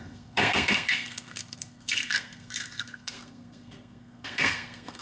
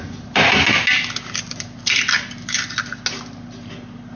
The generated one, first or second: first